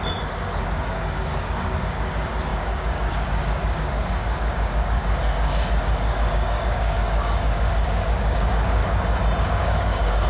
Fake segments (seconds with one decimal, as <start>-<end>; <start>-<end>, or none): 0.0-8.8; 9.4-10.3